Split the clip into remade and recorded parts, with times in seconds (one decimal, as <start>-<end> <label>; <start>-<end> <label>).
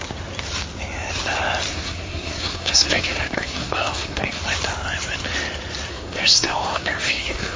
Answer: 0.0-1.7 recorded; 1.7-4.4 remade; 4.4-5.9 recorded; 5.9-7.6 remade